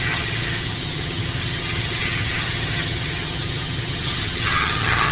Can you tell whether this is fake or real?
fake